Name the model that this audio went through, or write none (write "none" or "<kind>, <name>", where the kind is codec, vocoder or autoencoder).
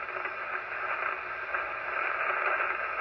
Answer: none